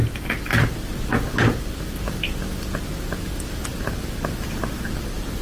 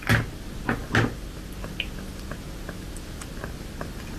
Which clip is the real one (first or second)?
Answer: second